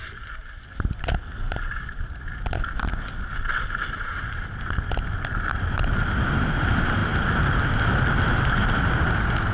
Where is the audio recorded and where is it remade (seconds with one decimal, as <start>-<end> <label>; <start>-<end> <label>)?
0.0-9.5 recorded